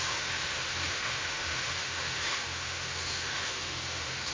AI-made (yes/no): yes